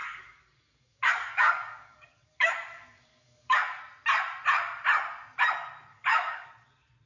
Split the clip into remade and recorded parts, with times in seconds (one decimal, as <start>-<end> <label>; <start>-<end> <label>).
0.0-3.8 remade; 3.8-5.9 recorded; 5.9-6.5 remade; 6.5-7.1 recorded